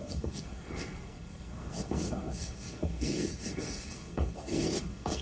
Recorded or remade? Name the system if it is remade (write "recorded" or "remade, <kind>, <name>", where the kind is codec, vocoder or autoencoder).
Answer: remade, codec, SNAC